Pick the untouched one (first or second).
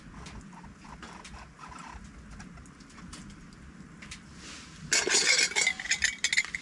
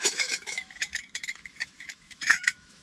first